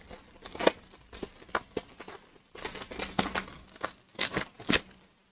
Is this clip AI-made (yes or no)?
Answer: no